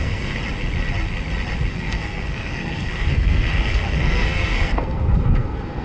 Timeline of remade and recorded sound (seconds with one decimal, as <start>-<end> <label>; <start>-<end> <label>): 0.0-0.4 remade; 0.4-1.7 recorded; 1.7-5.8 remade